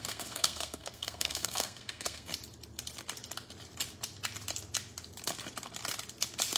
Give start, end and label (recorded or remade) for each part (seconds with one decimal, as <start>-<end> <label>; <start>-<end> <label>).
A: 0.0-2.3 remade; 2.3-6.6 recorded